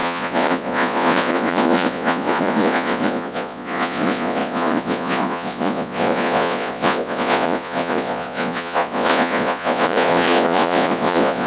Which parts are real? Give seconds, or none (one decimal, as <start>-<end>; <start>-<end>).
none